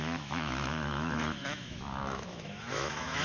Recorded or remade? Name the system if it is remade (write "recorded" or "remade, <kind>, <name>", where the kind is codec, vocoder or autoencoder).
remade, autoencoder, DAC-VAE